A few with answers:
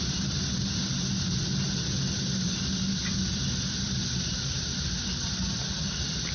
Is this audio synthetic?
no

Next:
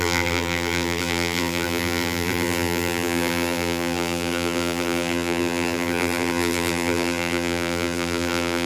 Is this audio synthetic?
yes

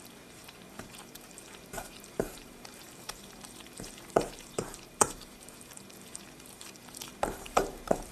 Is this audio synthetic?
yes